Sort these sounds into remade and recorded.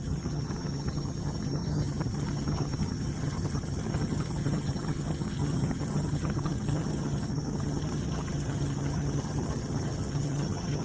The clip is remade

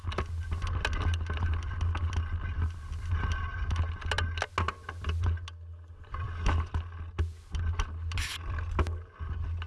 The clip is recorded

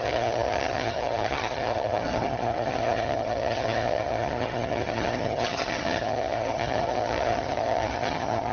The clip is remade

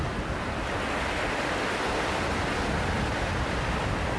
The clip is recorded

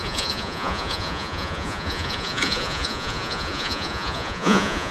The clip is remade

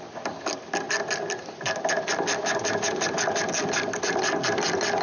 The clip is recorded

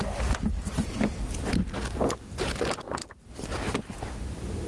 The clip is recorded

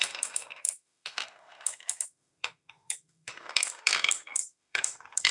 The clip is remade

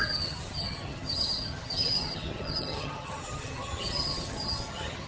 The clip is remade